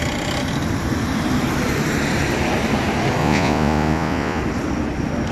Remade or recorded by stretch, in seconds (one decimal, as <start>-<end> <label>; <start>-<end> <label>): 0.0-3.2 recorded; 3.2-4.4 remade; 4.4-5.3 recorded